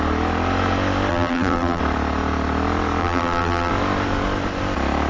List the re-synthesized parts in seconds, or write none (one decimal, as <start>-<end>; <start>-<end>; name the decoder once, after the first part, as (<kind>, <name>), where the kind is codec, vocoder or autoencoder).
1.1-1.8 (vocoder, BigVGAN v2); 3.0-3.7